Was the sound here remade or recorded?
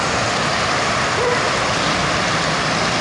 recorded